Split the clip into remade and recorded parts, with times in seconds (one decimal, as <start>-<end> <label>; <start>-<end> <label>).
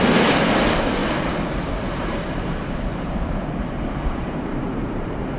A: 0.0-1.0 remade; 1.0-1.9 recorded; 1.9-5.4 remade